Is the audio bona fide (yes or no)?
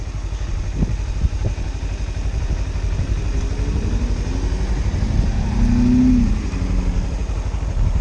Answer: yes